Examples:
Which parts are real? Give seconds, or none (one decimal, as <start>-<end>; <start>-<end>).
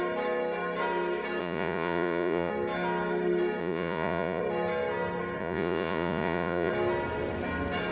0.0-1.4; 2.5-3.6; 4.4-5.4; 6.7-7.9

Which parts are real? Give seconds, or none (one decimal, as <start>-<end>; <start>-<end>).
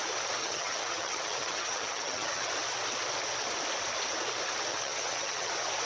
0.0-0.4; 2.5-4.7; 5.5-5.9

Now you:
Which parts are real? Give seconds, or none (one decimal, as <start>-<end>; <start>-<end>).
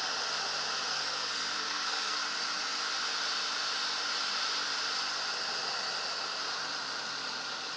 0.0-0.9; 2.2-7.8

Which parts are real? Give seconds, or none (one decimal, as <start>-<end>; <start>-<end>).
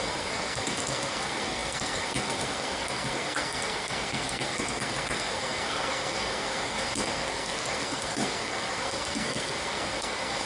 none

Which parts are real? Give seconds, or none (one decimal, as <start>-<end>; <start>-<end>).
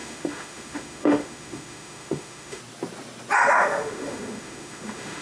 2.6-3.5